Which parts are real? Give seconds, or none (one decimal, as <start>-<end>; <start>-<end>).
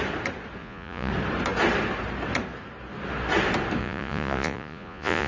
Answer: 0.0-0.6; 1.1-3.8